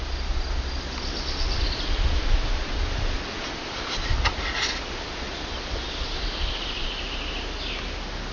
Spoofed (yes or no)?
no